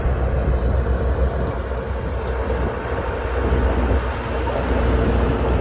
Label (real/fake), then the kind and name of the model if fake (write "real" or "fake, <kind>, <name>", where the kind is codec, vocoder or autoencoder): real